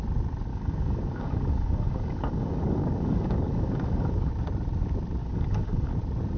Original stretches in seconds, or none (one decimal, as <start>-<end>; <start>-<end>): 0.0-0.5; 4.3-5.2; 5.9-6.4